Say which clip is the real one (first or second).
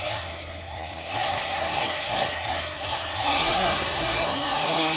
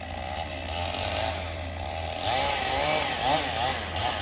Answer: second